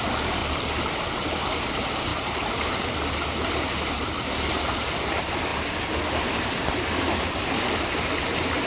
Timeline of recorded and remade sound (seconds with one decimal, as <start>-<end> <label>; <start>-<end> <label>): 0.0-2.1 recorded; 2.1-4.9 remade; 4.9-5.5 recorded; 5.5-7.7 remade; 7.7-8.7 recorded